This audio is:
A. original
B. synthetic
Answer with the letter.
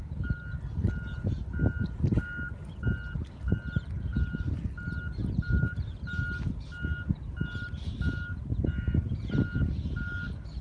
A